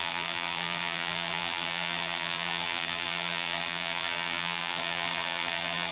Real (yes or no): no